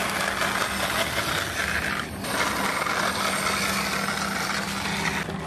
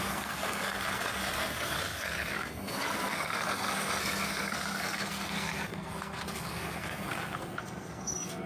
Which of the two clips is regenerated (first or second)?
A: second